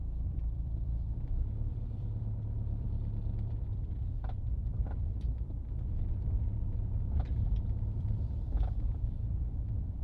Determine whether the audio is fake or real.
fake